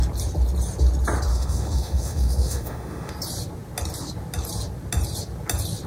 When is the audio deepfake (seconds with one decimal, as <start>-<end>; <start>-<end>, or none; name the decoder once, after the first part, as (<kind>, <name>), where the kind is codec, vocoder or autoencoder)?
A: 1.3-3.1 (autoencoder, DAC-VAE)